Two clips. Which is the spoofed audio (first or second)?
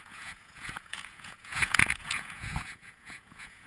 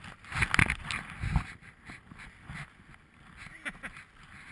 first